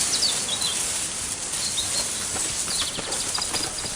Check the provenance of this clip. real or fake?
real